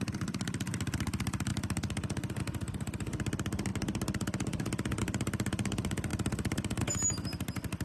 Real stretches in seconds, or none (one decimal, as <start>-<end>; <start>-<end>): 0.0-7.8